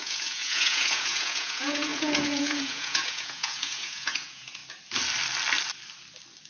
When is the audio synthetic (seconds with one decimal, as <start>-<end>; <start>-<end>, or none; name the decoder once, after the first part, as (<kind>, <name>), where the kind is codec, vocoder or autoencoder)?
0.0-4.6 (vocoder, Vocos)